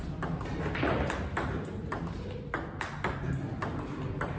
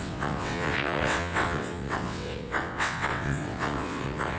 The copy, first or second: second